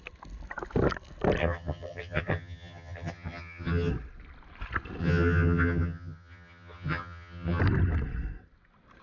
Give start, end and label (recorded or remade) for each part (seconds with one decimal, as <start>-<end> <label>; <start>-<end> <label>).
0.0-1.4 recorded; 1.4-3.9 remade; 3.9-5.0 recorded; 5.0-7.6 remade; 7.6-9.0 recorded